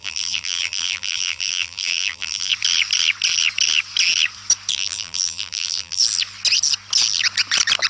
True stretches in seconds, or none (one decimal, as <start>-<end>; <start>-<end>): 2.5-4.7; 6.0-7.9

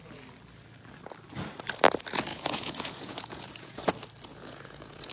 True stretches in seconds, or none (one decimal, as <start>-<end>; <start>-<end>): 0.0-2.3; 3.9-4.3

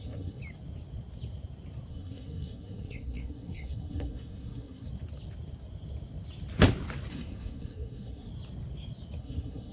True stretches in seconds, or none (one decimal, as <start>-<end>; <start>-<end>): 0.4-1.9; 4.9-7.1; 8.3-9.2

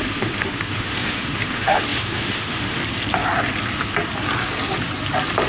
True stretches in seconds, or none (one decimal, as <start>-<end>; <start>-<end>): 2.8-5.5

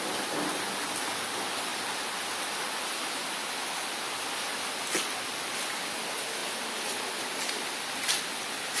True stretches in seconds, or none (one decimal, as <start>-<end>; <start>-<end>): 0.0-8.8